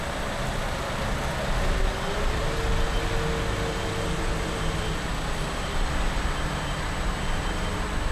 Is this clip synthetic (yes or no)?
no